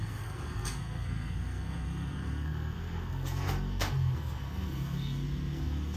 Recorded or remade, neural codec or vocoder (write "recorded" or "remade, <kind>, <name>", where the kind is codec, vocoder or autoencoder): remade, codec, SNAC